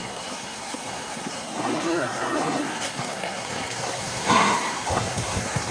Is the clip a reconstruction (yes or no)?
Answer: yes